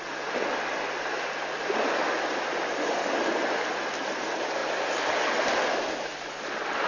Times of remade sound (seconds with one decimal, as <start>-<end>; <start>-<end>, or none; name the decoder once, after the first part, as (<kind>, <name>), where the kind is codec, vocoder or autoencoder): none